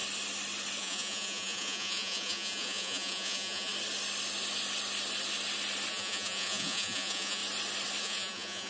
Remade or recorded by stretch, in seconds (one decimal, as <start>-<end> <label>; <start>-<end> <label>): 0.0-0.8 recorded; 0.8-3.7 remade; 3.7-5.9 recorded; 5.9-7.4 remade; 7.4-8.0 recorded; 8.0-8.7 remade

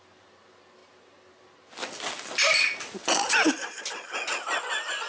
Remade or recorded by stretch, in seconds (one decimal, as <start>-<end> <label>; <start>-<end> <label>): 0.0-5.1 recorded

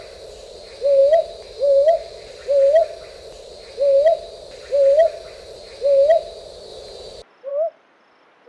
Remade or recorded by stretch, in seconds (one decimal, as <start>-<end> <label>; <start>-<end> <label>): 0.0-8.5 recorded